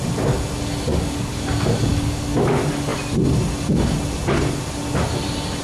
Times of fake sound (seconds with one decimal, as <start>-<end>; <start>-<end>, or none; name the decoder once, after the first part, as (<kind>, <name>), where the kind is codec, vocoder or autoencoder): 0.9-1.5 (codec, DAC); 1.9-2.5